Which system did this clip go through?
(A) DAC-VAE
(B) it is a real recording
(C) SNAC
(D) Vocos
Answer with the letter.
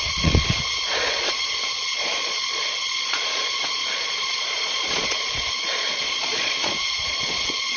D